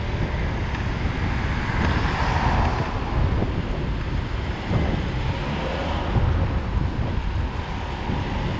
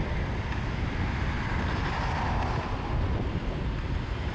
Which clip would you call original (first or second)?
first